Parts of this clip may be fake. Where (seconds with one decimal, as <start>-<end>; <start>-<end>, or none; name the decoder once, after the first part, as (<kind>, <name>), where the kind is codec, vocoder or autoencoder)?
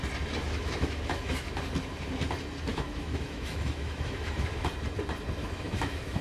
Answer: 0.4-1.6 (autoencoder, DAC-VAE); 2.7-4.7; 5.4-6.2